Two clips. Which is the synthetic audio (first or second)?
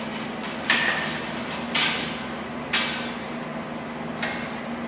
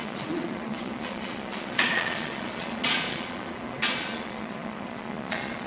second